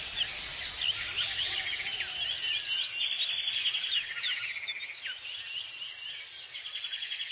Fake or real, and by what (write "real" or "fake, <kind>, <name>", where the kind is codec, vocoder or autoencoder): real